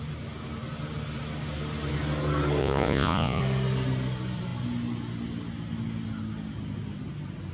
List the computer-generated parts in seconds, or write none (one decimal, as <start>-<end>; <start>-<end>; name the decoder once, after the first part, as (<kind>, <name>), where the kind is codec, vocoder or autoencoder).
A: 2.6-3.4 (vocoder, Vocos)